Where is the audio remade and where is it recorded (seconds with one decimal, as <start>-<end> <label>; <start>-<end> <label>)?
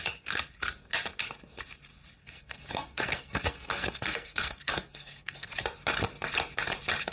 0.0-2.2 recorded; 2.2-5.5 remade; 5.5-7.1 recorded